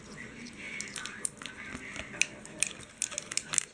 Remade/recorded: recorded